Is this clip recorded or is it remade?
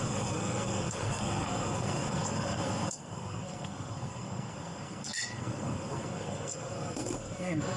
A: remade